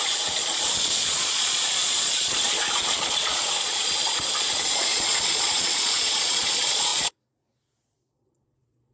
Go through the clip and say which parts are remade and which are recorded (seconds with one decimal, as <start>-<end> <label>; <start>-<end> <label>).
0.0-8.9 remade